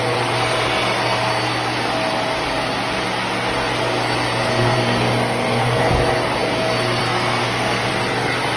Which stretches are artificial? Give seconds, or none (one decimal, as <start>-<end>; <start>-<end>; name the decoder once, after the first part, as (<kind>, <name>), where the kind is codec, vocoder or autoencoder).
4.5-5.8 (codec, SNAC); 7.4-7.9